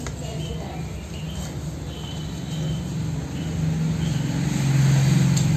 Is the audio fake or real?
real